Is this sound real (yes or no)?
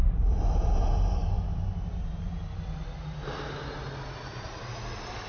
yes